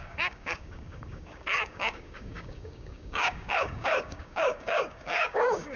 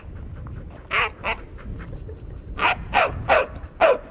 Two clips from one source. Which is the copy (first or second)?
first